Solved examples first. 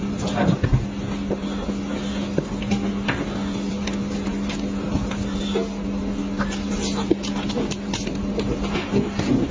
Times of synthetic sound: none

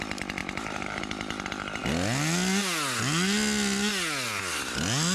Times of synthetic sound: 0.4-1.0 (vocoder, BigVGAN v2)